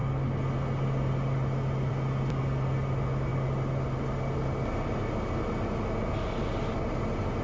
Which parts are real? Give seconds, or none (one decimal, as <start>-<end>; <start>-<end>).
0.0-7.4